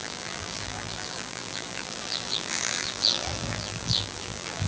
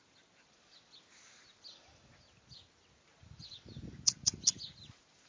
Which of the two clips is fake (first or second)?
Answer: first